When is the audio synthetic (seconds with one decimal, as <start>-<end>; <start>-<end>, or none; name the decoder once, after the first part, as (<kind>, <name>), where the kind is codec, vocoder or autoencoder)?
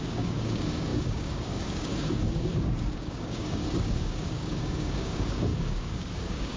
0.0-6.6 (codec, DAC)